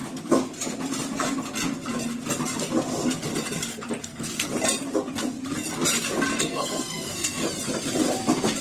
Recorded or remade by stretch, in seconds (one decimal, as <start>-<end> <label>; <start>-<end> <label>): 0.0-4.0 recorded; 4.0-4.5 remade; 4.5-6.4 recorded; 6.4-7.4 remade; 7.4-8.6 recorded